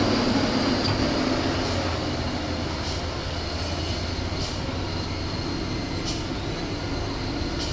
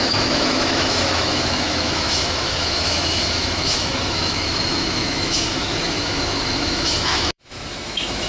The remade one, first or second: second